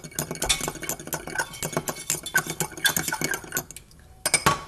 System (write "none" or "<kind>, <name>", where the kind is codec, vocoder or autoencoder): none